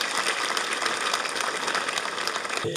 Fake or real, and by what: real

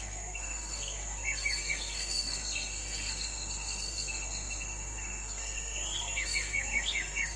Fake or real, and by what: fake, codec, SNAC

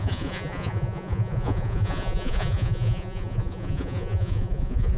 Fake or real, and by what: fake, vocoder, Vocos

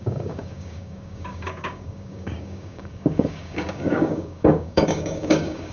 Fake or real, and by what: fake, codec, DAC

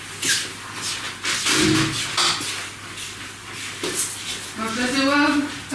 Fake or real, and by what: real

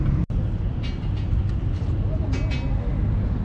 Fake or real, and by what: real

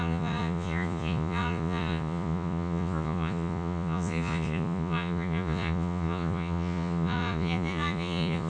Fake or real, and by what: fake, vocoder, Vocos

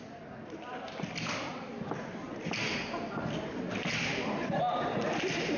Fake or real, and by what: real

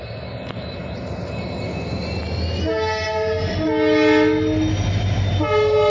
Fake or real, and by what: real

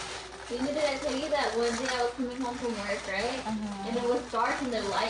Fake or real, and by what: real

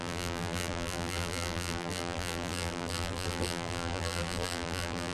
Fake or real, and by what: fake, vocoder, BigVGAN v2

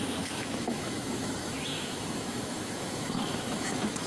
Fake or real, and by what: fake, autoencoder, DAC-VAE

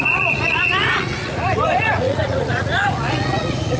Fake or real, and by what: fake, vocoder, Vocos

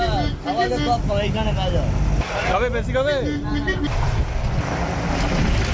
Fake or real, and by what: real